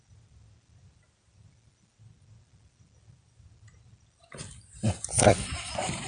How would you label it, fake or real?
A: real